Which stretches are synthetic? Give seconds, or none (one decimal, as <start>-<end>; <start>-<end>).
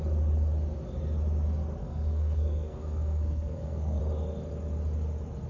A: 1.8-4.0